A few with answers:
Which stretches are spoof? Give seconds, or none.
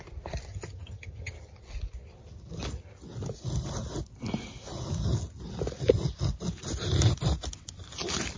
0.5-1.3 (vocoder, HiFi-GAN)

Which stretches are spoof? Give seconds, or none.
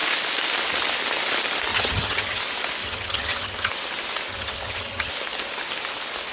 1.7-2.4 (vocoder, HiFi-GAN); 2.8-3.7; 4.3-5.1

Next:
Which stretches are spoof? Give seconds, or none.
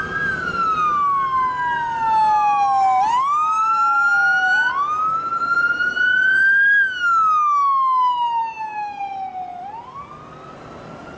none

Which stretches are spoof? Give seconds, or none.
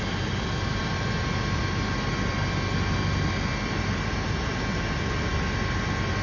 none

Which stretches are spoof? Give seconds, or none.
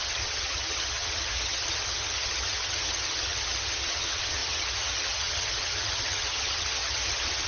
0.0-7.5 (vocoder, HiFi-GAN)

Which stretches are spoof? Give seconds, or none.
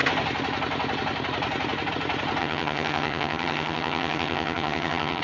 2.4-5.2 (vocoder, HiFi-GAN)